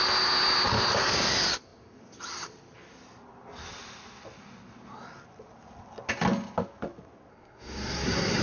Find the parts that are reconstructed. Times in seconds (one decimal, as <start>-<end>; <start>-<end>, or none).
7.3-8.4